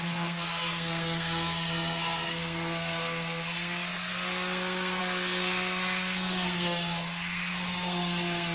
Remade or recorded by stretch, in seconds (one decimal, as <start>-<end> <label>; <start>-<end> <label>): 0.0-8.5 remade

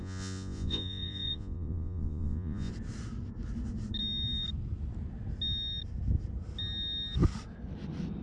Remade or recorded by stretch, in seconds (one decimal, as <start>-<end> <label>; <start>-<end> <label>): 0.0-2.7 remade; 2.7-8.2 recorded

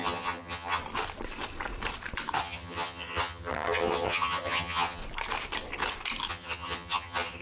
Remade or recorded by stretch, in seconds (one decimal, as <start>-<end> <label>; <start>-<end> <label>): 0.0-0.8 remade; 0.8-2.4 recorded; 2.4-5.0 remade; 5.0-6.3 recorded; 6.3-7.4 remade

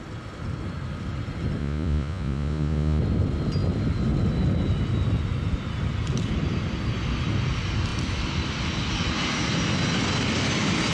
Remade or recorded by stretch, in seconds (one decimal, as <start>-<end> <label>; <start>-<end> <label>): 0.0-1.6 recorded; 1.6-3.0 remade; 3.0-10.9 recorded

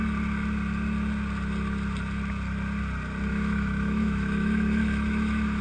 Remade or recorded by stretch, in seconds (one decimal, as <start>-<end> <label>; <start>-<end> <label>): 0.0-3.3 recorded; 3.3-5.6 remade